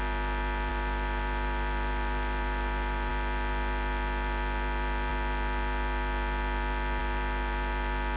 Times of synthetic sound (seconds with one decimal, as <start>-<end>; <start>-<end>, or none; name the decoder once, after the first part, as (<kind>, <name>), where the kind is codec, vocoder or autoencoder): 0.7-3.1 (vocoder, BigVGAN v2)